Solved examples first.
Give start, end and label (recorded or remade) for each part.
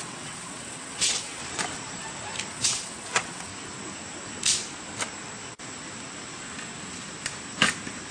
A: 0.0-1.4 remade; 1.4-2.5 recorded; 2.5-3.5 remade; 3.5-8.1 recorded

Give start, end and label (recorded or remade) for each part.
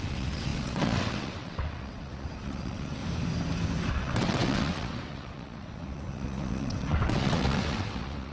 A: 0.0-3.0 remade; 3.0-3.9 recorded; 3.9-8.3 remade